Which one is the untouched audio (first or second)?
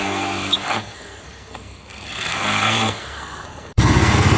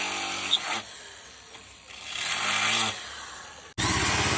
second